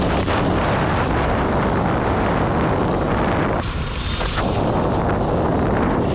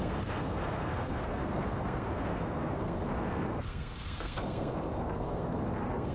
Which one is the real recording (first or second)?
first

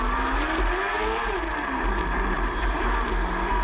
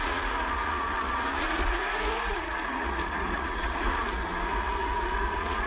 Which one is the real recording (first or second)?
first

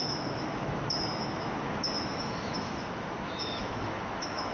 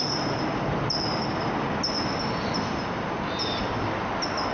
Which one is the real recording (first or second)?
second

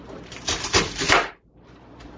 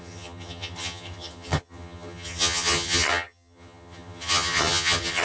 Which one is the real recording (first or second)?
first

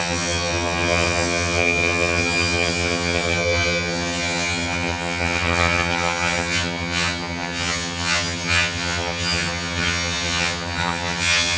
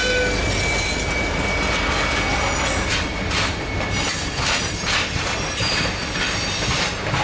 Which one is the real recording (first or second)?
second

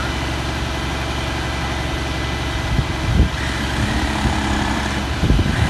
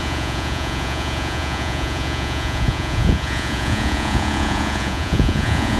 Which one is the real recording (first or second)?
first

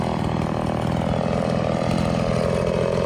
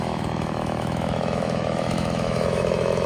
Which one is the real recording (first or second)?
first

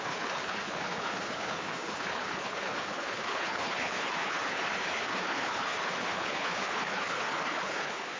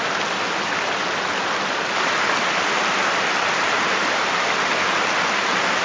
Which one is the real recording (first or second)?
second